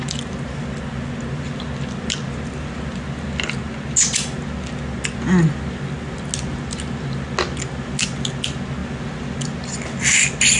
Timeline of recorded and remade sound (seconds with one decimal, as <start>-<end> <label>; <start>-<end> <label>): 0.0-10.6 recorded